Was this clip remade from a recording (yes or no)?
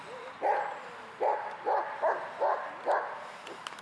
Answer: yes